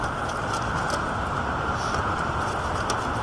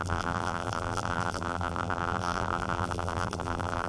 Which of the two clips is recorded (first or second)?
first